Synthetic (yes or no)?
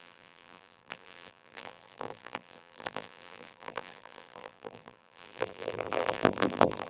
yes